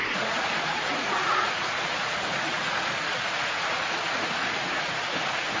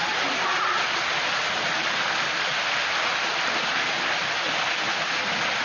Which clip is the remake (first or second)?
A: first